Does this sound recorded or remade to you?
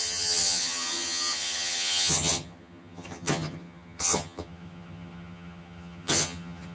remade